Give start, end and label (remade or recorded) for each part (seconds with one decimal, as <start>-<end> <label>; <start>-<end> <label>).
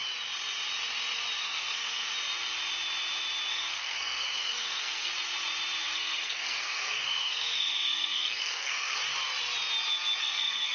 0.0-1.4 recorded; 1.4-2.1 remade; 2.1-3.5 recorded; 3.5-5.1 remade; 5.1-5.8 recorded; 5.8-9.0 remade; 9.0-10.2 recorded; 10.2-10.7 remade